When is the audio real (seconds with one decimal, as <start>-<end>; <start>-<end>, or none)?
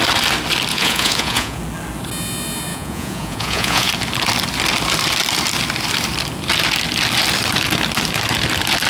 0.0-0.7; 1.6-2.7; 3.9-8.9